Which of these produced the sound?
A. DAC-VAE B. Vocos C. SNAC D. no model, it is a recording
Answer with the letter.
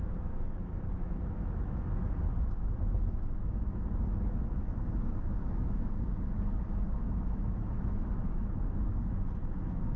A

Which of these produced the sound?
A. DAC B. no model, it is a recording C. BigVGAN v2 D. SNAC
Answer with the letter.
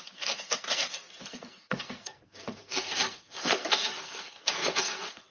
D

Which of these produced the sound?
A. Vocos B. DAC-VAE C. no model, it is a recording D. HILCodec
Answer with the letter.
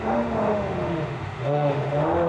B